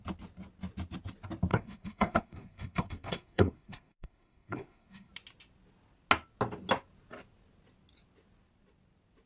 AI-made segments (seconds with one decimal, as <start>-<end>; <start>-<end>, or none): 1.5-5.1